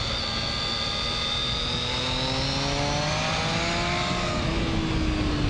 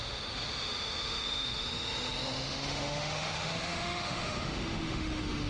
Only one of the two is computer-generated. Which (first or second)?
second